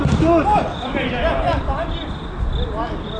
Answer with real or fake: real